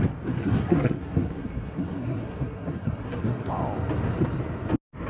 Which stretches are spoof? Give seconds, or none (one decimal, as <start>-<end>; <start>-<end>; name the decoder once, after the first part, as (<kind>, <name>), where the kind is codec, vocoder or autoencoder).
0.4-3.5 (codec, SNAC)